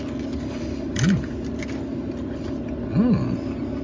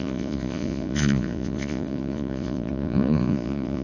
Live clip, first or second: first